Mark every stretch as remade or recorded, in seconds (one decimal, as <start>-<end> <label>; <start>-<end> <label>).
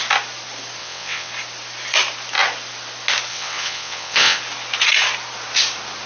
0.0-0.8 recorded; 0.8-1.3 remade; 1.3-3.3 recorded; 3.3-4.4 remade; 4.4-6.1 recorded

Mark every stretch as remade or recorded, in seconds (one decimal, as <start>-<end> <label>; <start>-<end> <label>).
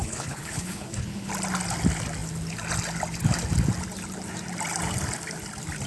0.0-1.3 remade; 1.3-5.9 recorded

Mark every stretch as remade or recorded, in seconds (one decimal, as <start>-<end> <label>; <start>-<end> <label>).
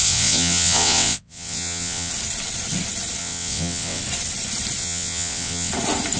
0.0-2.1 remade; 2.1-3.2 recorded; 3.2-4.0 remade; 4.0-4.8 recorded; 4.8-5.7 remade; 5.7-6.2 recorded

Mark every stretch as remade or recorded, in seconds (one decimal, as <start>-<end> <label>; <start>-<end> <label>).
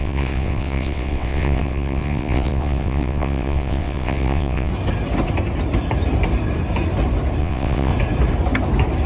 0.0-4.7 remade; 4.7-7.4 recorded; 7.4-7.9 remade; 7.9-9.1 recorded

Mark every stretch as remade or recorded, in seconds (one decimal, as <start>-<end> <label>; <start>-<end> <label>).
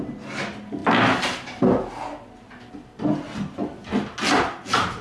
0.0-5.0 recorded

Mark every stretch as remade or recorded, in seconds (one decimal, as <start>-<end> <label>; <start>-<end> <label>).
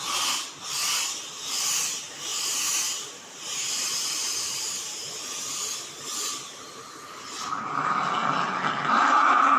0.0-2.3 recorded; 2.3-5.2 remade; 5.2-9.6 recorded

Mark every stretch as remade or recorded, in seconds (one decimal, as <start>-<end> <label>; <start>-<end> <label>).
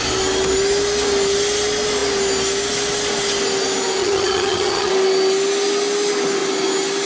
0.0-4.0 recorded; 4.0-4.9 remade; 4.9-7.1 recorded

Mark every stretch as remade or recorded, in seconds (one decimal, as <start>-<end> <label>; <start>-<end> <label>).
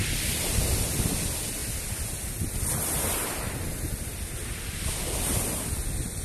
0.0-0.7 remade; 0.7-6.2 recorded